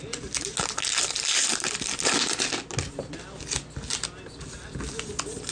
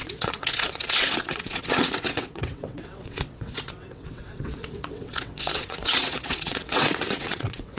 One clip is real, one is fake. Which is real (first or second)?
first